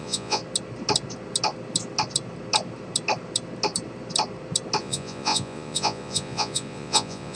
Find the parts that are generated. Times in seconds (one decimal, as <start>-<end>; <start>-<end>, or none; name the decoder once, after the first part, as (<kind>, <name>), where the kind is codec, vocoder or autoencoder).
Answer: 0.0-0.4 (vocoder, Vocos); 4.8-7.4